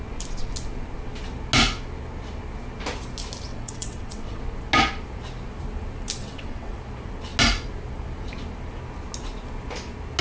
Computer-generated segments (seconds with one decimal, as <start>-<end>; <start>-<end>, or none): 3.5-4.4; 6.2-6.8

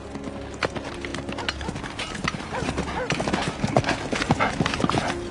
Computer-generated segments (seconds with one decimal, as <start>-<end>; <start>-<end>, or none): 1.1-1.7; 2.2-2.7

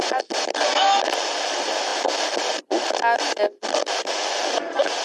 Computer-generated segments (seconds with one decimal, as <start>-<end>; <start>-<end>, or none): none